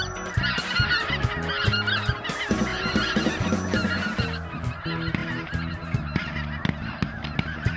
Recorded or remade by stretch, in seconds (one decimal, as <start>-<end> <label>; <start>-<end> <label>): 0.0-2.7 recorded; 2.7-3.5 remade; 3.5-7.8 recorded